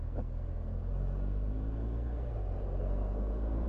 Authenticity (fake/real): fake